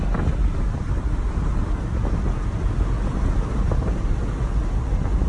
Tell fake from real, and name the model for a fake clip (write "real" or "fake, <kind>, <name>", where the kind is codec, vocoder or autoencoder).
real